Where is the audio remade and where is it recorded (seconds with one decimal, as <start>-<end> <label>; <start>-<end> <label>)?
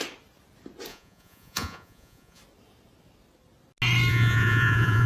0.0-0.9 recorded; 0.9-2.4 remade; 2.4-4.1 recorded; 4.1-5.1 remade